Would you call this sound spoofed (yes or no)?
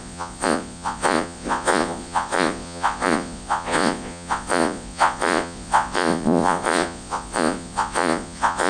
yes